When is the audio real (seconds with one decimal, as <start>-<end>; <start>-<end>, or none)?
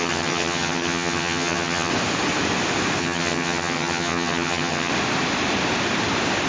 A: 1.9-3.0; 4.9-6.5